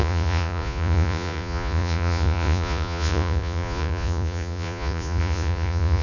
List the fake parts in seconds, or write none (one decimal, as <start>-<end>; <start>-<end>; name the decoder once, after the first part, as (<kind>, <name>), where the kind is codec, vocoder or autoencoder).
0.0-6.0 (vocoder, Vocos)